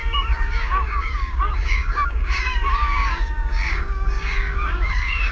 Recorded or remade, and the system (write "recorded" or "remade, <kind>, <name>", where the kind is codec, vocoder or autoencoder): remade, codec, DAC